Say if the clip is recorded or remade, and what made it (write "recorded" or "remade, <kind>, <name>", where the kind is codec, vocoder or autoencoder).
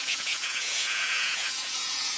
remade, vocoder, Vocos